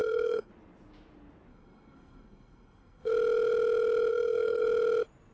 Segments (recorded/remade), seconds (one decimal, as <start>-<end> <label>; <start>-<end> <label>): 0.0-0.5 remade; 0.5-1.5 recorded; 1.5-3.1 remade; 3.1-4.1 recorded; 4.1-4.6 remade; 4.6-5.3 recorded